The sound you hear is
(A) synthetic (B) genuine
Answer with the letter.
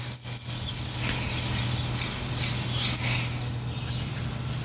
B